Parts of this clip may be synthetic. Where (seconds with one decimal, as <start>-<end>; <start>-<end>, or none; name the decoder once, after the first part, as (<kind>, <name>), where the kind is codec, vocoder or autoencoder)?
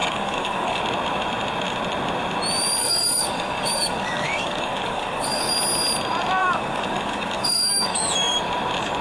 0.0-0.8 (codec, DAC); 2.8-5.5; 6.4-8.4